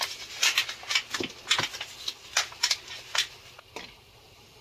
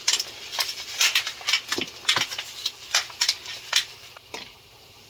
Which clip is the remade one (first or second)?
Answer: second